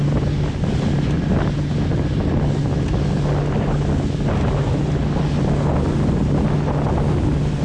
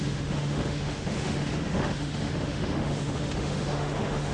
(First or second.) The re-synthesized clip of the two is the second